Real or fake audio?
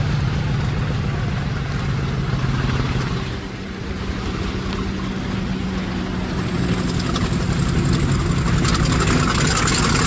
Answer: real